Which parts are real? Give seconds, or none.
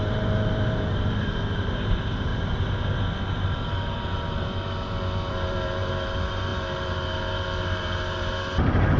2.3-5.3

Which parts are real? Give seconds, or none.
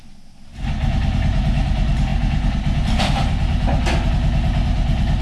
0.0-5.2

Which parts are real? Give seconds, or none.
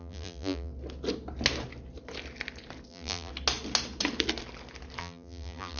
0.7-2.9; 3.3-5.0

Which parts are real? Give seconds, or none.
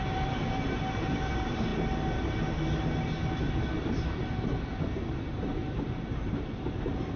1.7-3.4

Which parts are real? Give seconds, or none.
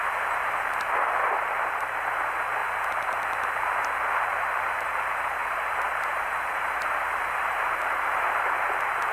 2.6-4.0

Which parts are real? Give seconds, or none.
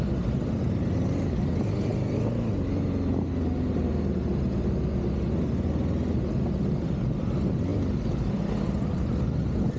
0.0-7.7; 8.5-9.8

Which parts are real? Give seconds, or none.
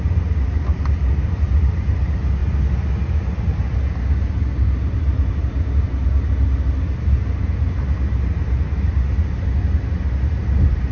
0.0-0.7; 1.5-10.9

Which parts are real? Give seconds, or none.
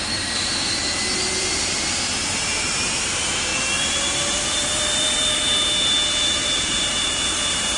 0.8-1.4; 3.5-4.5